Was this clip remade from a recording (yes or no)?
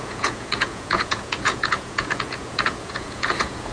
yes